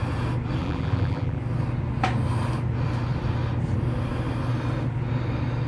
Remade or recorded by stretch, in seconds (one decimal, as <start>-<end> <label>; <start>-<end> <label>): 0.0-0.6 recorded; 0.6-1.4 remade; 1.4-5.7 recorded